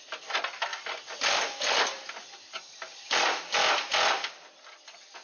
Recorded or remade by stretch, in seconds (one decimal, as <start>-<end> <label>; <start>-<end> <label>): 0.0-5.2 recorded